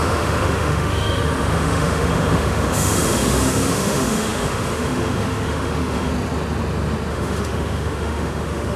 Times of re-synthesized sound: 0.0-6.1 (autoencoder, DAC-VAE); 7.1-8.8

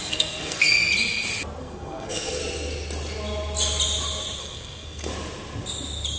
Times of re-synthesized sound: 0.0-0.8 (codec, SNAC); 1.6-2.4; 4.4-5.1

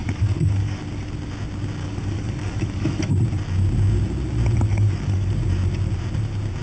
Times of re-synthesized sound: 0.0-0.8 (codec, DAC); 1.8-3.1; 4.7-5.3

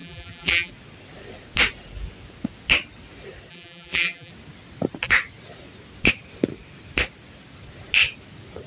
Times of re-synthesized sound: 0.0-0.7 (vocoder, BigVGAN v2); 3.5-4.3

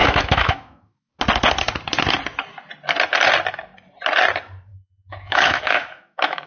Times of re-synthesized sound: 0.0-1.1 (autoencoder, DAC-VAE); 4.7-6.5